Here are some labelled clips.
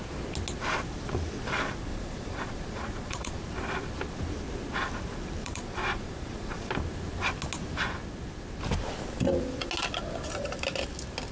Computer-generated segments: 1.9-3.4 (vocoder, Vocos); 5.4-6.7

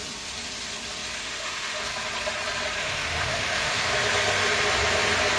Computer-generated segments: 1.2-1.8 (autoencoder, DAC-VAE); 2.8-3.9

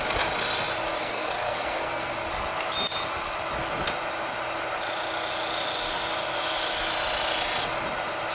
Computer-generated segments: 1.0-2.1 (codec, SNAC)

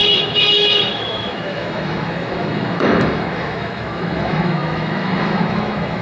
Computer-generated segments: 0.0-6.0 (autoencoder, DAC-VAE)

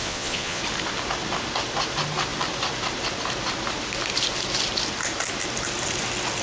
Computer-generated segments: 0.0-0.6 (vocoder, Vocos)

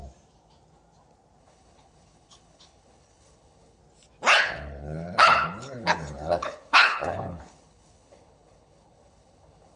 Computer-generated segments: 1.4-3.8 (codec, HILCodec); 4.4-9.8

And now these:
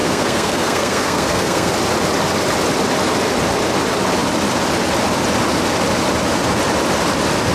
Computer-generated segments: 0.0-1.7 (codec, SNAC)